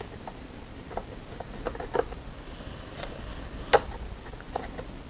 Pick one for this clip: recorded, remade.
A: recorded